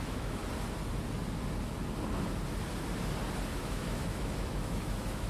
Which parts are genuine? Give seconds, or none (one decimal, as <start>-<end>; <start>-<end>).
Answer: 0.4-3.6